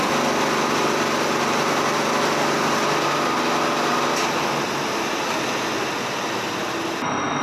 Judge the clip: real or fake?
real